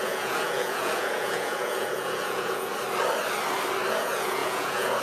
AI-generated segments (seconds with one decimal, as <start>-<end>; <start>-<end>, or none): 0.0-2.7; 3.9-5.0